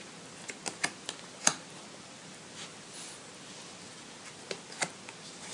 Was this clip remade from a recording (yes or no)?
no